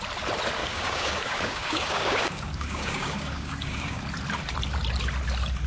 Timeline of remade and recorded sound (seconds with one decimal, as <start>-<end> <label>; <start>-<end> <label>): 0.0-0.6 recorded; 0.6-4.0 remade; 4.0-5.7 recorded